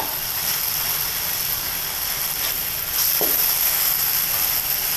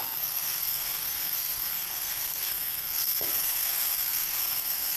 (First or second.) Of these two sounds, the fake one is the second